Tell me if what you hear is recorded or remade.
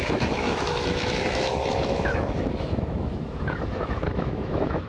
remade